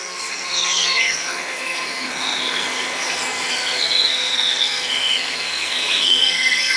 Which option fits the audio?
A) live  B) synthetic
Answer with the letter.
B